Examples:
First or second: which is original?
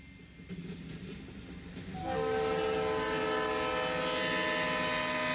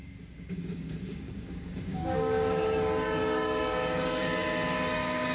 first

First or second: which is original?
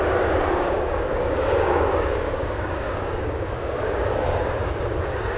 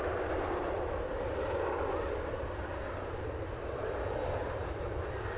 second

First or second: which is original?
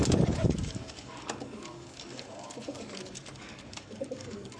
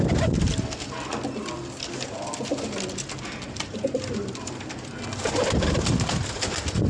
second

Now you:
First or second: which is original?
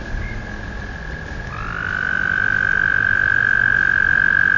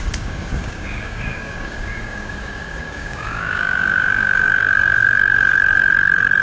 first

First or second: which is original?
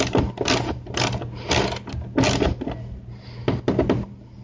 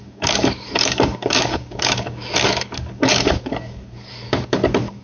first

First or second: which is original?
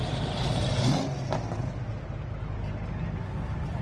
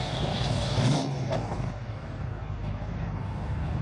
first